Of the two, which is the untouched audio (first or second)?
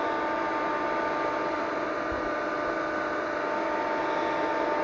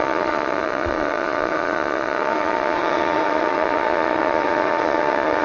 first